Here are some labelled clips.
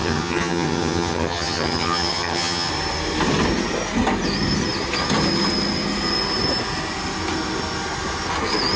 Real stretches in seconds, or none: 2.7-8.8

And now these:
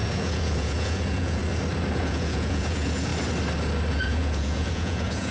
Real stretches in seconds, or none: 1.4-1.9; 3.1-3.9

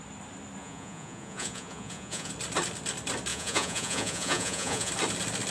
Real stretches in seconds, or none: 0.0-0.6; 2.3-3.3; 4.9-5.5

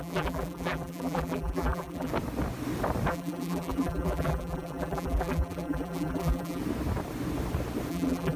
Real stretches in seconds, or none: 2.1-3.1; 6.6-7.9

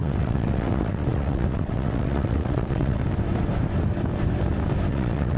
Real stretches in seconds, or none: 3.0-4.9